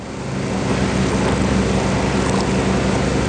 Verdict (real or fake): real